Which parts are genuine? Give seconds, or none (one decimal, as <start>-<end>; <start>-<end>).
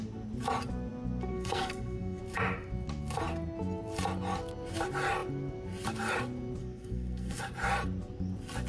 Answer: 0.0-1.3; 2.2-6.6; 7.4-8.7